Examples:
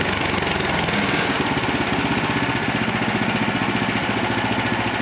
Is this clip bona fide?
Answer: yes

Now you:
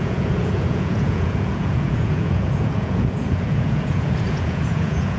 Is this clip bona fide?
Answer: no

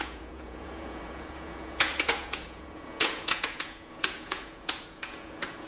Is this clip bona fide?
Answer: no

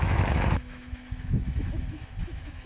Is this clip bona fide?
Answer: no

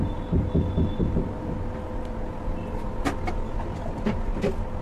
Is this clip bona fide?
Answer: yes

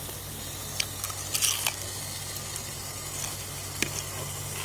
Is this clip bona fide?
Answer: yes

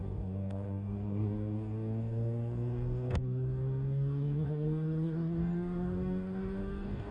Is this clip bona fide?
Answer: no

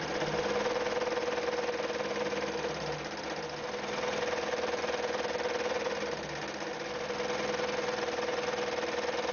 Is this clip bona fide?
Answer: yes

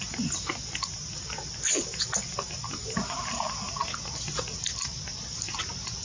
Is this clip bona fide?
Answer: yes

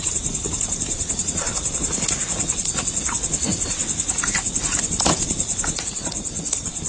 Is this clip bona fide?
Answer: no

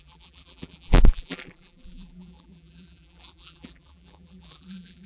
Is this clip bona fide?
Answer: no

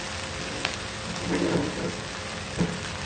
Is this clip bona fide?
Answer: yes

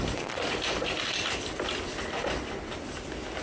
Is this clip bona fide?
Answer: yes